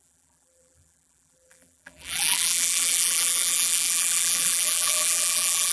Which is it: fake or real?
fake